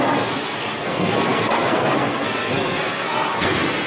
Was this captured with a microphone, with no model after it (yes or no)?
no